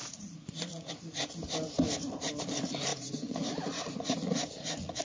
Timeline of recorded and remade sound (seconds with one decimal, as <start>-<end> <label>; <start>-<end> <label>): 0.0-0.9 remade; 0.9-2.9 recorded; 2.9-5.0 remade

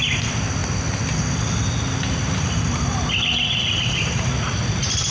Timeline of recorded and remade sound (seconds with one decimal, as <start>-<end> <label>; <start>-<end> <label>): 0.0-5.1 recorded

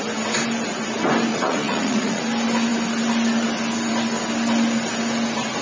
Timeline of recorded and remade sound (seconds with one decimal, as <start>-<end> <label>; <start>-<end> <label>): 0.0-1.3 recorded; 1.3-2.2 remade; 2.2-5.6 recorded

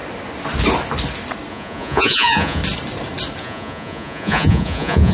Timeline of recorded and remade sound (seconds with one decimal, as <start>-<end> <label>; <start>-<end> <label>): 0.0-1.5 recorded; 1.5-2.6 remade; 2.6-3.4 recorded; 3.4-5.1 remade

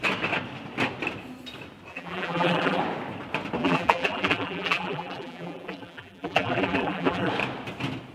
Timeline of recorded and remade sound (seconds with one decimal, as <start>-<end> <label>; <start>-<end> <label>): 0.0-1.9 recorded; 1.9-2.8 remade; 2.8-3.6 recorded; 3.6-7.3 remade; 7.3-8.1 recorded

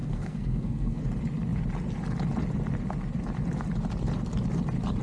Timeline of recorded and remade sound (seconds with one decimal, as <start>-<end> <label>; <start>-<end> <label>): 0.0-1.0 remade; 1.0-5.0 recorded

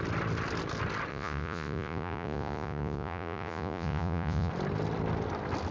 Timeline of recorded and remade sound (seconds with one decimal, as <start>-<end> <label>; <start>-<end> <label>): 0.0-1.1 recorded; 1.1-4.5 remade; 4.5-5.7 recorded